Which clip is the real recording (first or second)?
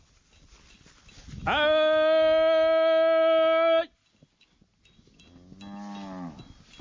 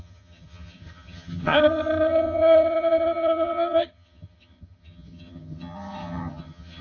first